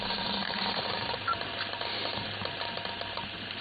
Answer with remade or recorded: remade